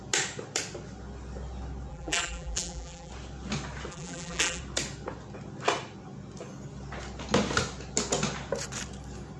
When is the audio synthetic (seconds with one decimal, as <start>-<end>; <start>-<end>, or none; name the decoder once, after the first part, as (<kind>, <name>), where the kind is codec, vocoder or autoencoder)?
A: 1.9-3.1 (vocoder, BigVGAN v2); 3.9-4.6